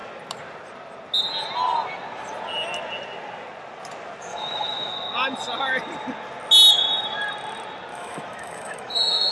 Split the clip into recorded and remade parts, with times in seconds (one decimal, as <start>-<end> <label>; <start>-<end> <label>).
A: 0.0-4.3 recorded; 4.3-4.9 remade; 4.9-7.9 recorded; 7.9-9.3 remade